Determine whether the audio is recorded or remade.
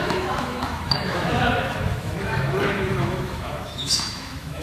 remade